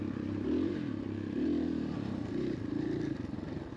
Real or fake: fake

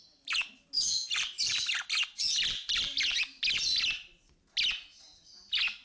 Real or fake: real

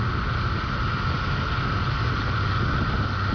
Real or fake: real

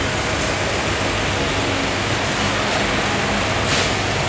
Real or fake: real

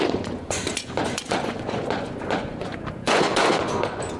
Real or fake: fake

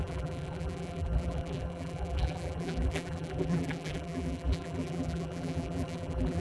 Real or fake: fake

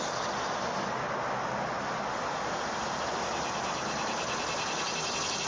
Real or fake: real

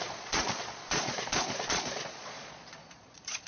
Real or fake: fake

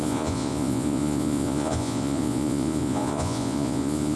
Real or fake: fake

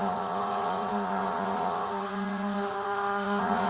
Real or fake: fake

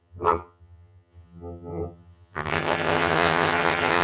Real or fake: fake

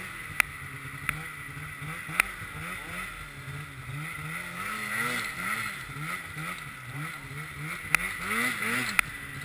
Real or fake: real